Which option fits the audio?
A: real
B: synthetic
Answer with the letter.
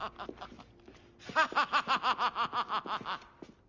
A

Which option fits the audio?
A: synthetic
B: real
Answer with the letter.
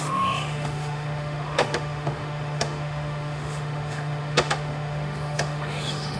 A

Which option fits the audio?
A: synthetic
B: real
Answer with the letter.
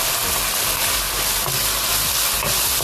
B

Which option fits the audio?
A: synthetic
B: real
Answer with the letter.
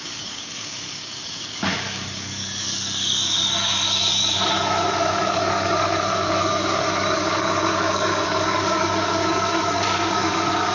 A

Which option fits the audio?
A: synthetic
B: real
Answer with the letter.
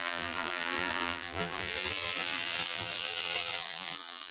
A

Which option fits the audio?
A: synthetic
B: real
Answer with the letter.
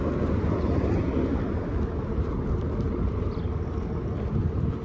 B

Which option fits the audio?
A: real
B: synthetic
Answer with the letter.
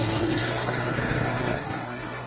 B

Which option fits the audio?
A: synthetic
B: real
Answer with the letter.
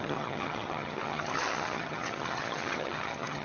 A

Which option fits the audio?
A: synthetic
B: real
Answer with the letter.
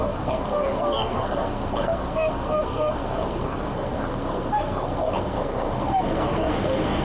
A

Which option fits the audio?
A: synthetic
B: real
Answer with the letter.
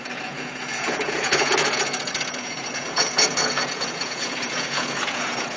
A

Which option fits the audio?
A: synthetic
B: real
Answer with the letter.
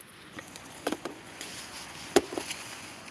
A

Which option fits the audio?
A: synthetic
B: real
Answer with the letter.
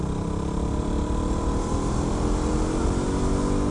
B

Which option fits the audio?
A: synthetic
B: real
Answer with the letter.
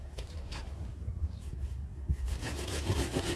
A